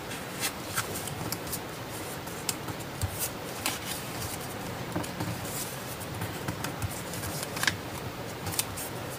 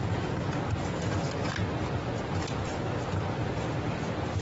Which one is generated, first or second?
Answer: first